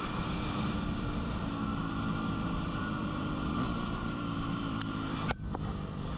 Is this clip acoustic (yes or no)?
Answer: no